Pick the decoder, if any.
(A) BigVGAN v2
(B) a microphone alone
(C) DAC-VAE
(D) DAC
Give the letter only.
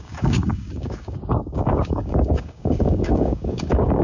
D